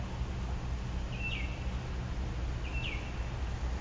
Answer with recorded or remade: recorded